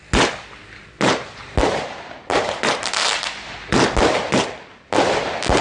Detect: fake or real real